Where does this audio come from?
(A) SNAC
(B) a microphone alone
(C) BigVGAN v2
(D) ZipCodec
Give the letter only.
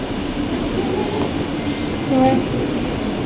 B